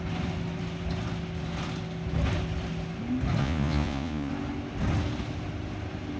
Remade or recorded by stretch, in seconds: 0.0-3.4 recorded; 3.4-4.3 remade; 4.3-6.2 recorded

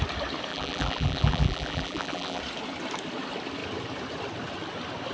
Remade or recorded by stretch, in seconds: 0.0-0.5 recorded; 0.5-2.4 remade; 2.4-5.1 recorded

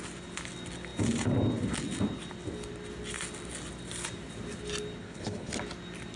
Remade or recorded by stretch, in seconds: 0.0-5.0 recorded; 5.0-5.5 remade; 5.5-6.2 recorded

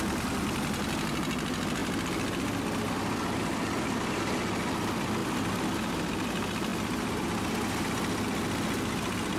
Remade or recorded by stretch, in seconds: 0.0-9.4 recorded

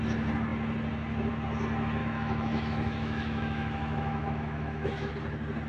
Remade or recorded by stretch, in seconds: 0.0-2.0 recorded; 2.0-5.1 remade; 5.1-5.7 recorded

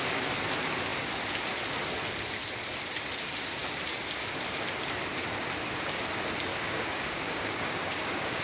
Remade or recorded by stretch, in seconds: 0.0-6.5 recorded; 6.5-8.4 remade

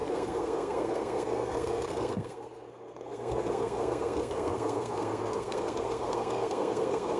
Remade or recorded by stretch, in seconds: 0.0-7.2 remade

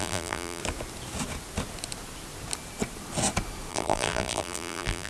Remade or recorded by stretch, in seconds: 0.0-0.6 remade; 0.6-3.7 recorded; 3.7-5.1 remade